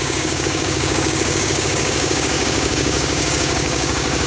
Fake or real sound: fake